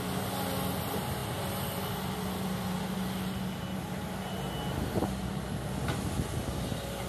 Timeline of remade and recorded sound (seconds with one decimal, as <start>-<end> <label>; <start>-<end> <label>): 0.0-7.1 recorded